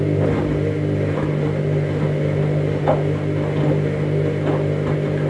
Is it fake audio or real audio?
real